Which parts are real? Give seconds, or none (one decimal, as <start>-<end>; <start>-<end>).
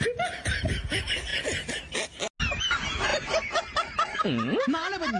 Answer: 0.0-3.1; 4.2-5.2